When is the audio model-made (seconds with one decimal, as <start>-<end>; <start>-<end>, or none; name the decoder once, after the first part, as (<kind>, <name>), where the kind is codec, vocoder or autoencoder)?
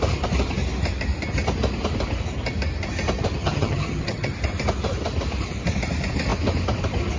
3.4-4.3 (vocoder, HiFi-GAN)